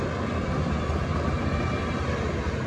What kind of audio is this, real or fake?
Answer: real